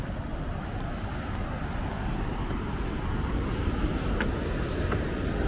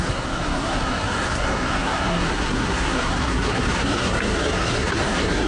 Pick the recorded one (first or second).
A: first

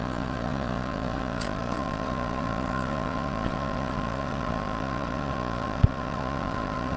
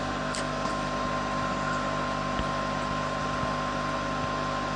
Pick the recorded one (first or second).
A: second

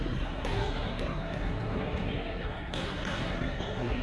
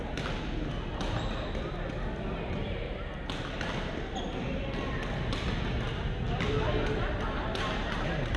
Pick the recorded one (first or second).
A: second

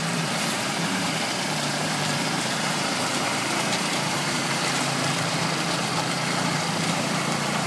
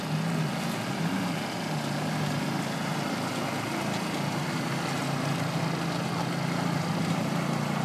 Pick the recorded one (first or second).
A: second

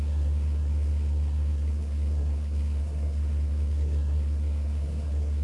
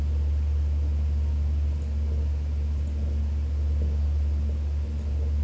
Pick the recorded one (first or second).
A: second